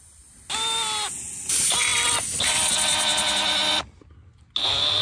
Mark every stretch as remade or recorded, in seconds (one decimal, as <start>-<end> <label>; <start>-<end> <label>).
0.0-5.0 recorded